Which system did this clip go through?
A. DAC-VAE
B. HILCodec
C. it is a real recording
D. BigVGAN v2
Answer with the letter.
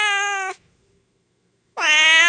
A